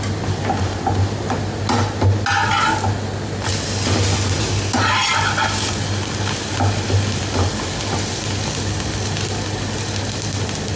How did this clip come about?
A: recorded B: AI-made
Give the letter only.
A